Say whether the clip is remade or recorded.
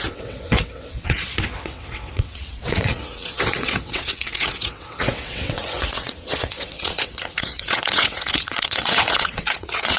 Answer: remade